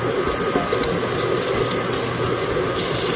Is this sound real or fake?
real